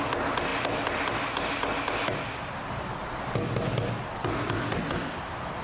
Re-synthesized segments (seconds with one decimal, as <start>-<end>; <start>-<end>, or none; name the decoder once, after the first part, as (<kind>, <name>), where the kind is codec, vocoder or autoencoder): none